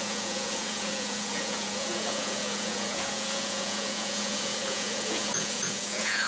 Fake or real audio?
fake